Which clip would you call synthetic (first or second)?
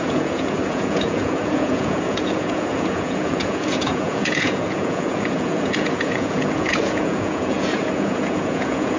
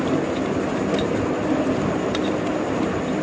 first